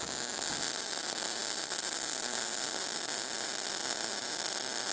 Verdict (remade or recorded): recorded